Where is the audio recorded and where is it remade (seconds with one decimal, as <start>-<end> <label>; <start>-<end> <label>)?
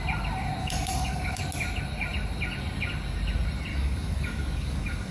0.0-0.6 recorded; 0.6-1.4 remade; 1.4-3.7 recorded; 3.7-5.1 remade